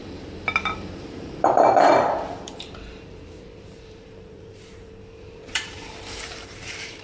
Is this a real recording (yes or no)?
no